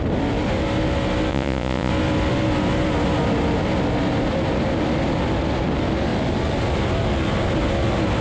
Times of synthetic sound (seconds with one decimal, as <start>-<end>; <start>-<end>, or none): 1.3-1.9